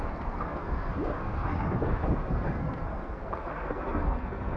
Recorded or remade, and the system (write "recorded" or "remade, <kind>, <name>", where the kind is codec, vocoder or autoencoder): remade, codec, SNAC